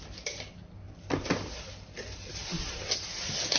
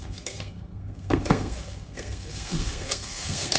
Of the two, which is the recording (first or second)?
first